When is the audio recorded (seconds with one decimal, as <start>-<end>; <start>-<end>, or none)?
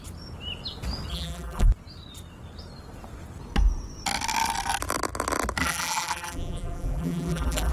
0.0-1.1; 1.7-5.6